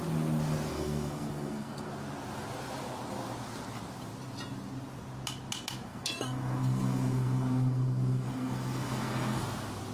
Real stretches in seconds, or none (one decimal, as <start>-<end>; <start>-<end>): 0.0-0.7; 1.9-5.9; 9.4-9.9